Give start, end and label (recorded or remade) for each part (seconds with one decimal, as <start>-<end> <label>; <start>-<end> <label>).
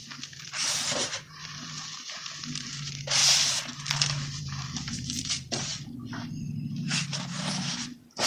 0.0-3.2 remade; 3.2-4.4 recorded; 4.4-5.7 remade; 5.7-7.5 recorded; 7.5-8.3 remade